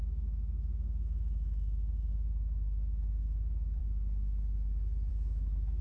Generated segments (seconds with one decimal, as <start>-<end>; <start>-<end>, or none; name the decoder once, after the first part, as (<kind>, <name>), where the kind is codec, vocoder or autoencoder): 0.0-3.8 (autoencoder, DAC-VAE); 5.1-5.8